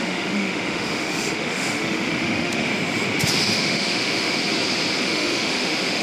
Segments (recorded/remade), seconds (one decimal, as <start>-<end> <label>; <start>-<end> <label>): 0.0-2.7 remade; 2.7-3.4 recorded; 3.4-4.4 remade; 4.4-5.0 recorded; 5.0-6.0 remade